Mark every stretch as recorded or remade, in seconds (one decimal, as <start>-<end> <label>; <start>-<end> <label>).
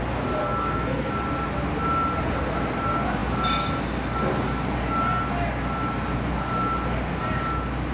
0.0-0.4 recorded; 0.4-1.1 remade; 1.1-7.9 recorded